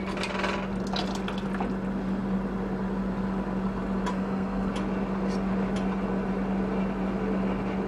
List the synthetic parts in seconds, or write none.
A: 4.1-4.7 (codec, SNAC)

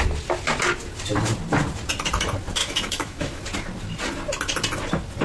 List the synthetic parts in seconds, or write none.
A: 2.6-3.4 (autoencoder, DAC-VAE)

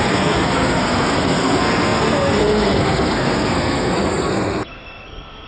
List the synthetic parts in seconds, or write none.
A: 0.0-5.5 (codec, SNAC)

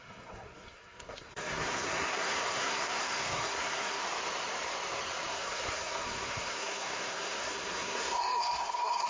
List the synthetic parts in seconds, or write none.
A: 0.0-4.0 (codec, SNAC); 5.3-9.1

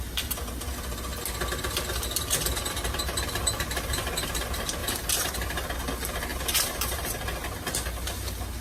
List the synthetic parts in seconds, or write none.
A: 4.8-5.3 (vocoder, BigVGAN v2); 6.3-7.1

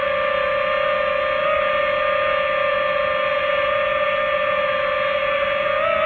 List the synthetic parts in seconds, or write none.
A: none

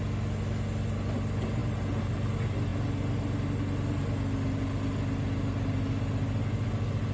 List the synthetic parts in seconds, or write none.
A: none

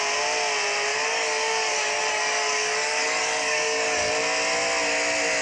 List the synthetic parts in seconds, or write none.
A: 0.9-4.1 (codec, DAC)